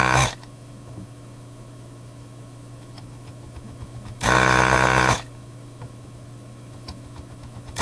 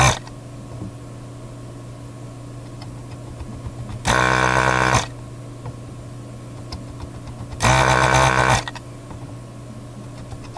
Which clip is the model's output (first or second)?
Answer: first